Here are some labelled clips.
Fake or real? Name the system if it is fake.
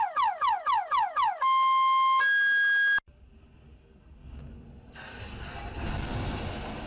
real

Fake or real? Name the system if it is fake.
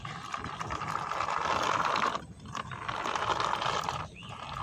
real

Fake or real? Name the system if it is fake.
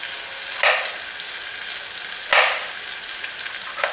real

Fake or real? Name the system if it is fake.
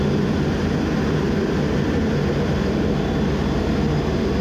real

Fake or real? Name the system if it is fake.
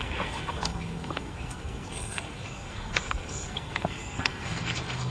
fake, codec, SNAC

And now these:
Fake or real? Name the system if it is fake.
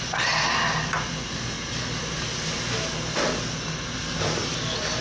real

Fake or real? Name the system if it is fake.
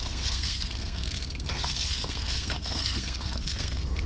fake, codec, SNAC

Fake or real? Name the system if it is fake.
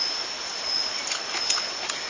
real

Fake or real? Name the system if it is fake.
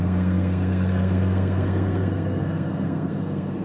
fake, codec, SNAC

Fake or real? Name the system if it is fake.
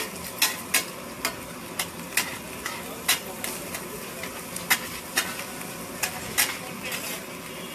real